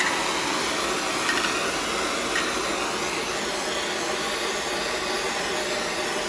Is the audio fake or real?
real